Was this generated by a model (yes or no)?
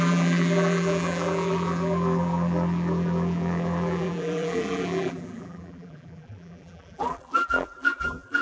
yes